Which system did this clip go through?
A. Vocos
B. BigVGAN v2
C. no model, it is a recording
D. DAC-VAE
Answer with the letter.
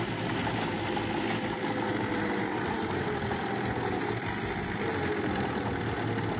C